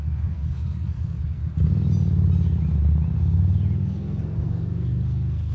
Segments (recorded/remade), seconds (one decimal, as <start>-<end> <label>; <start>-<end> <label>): 0.0-1.4 remade; 1.4-3.8 recorded; 3.8-5.5 remade